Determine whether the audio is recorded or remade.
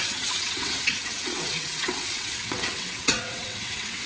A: remade